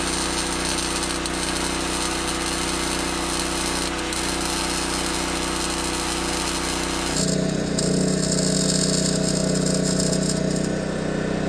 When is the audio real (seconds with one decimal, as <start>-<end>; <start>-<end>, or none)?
0.0-11.5

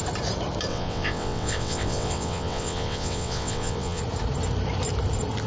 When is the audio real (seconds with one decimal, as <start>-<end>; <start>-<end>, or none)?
0.0-0.7; 4.0-5.5

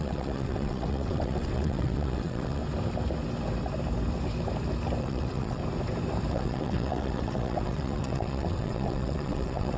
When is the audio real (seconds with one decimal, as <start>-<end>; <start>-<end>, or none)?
2.6-5.0; 5.6-6.3

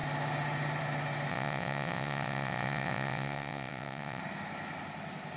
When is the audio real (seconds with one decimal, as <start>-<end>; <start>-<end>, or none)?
0.0-1.3; 4.2-5.4

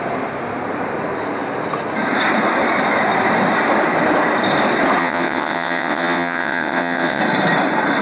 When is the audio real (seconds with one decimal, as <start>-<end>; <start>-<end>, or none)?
0.0-5.0; 7.2-8.0

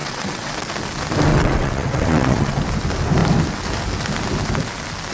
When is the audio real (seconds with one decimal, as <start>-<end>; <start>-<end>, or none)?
0.7-1.3; 2.6-5.1

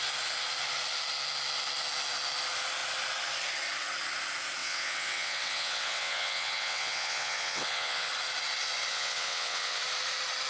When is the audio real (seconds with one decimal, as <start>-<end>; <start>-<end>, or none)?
0.0-4.6; 8.1-8.9; 9.8-10.5

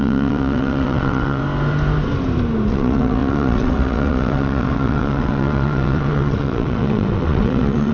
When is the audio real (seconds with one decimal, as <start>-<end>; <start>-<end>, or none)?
1.4-2.7